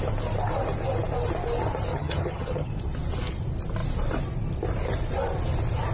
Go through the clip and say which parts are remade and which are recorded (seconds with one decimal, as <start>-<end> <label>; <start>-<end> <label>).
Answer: 0.0-1.9 recorded; 1.9-2.7 remade; 2.7-5.9 recorded